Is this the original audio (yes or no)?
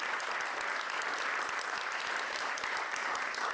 yes